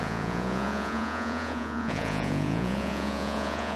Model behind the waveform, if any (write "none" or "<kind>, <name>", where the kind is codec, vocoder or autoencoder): vocoder, Vocos